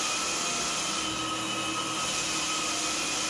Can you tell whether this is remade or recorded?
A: recorded